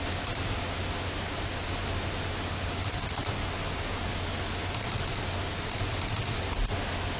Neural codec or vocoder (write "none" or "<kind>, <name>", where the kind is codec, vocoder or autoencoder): none